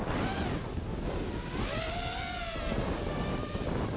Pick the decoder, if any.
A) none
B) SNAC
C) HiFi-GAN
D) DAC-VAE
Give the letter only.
A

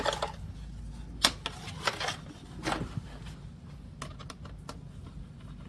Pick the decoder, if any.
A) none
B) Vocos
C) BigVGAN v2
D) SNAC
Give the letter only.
A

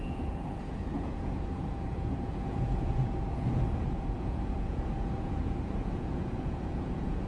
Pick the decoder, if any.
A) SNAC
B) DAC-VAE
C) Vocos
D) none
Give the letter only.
C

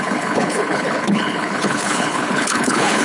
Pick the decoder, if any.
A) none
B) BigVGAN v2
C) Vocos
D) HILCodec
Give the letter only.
D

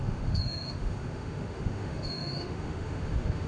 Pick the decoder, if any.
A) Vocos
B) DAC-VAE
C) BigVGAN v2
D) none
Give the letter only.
B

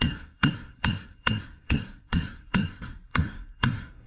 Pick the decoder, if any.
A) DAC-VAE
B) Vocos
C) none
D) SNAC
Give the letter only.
D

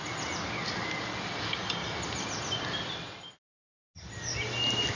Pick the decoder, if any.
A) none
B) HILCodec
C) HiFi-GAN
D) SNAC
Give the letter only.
A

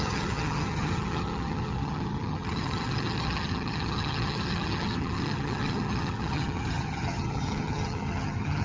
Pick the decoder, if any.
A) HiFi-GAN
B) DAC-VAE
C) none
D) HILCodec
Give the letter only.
A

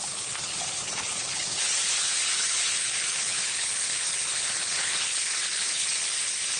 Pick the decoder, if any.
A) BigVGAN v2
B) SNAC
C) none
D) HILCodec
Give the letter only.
D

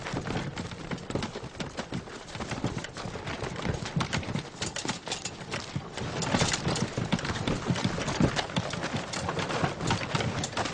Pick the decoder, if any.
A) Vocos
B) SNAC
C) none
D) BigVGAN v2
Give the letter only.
C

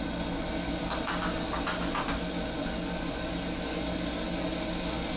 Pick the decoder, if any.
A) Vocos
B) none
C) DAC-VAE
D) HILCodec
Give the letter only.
B